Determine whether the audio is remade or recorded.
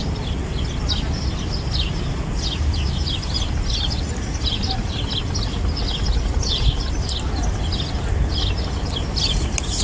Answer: recorded